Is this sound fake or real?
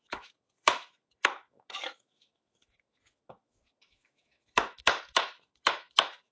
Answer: fake